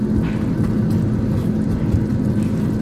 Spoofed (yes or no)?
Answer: no